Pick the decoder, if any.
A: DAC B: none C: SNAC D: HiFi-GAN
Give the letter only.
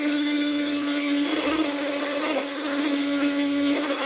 C